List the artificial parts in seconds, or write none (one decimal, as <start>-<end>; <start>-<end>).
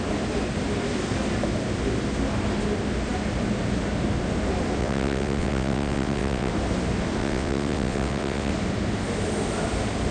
4.8-6.5; 7.2-8.5